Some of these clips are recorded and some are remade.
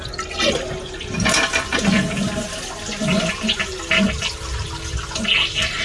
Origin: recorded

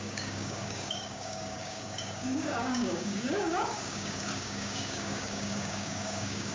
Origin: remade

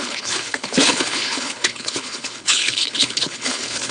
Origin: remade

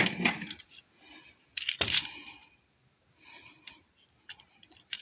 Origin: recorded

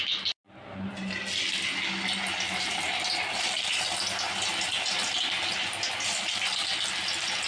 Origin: recorded